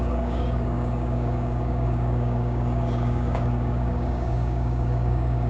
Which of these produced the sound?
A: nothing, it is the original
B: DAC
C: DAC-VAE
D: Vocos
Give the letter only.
B